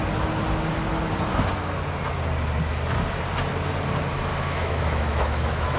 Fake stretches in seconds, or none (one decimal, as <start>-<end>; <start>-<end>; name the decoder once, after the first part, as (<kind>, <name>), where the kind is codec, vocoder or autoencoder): 4.3-5.8 (autoencoder, DAC-VAE)